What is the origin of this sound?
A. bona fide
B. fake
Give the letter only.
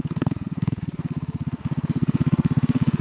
B